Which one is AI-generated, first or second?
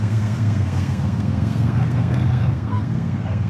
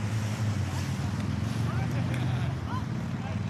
first